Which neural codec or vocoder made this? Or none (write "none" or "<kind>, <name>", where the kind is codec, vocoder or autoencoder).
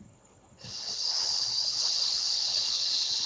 codec, HILCodec